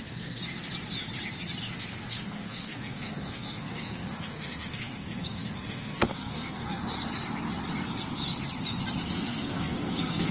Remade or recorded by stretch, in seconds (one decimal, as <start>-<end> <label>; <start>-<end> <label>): 0.0-0.4 remade; 0.4-2.1 recorded; 2.1-6.8 remade; 6.8-9.1 recorded; 9.1-10.3 remade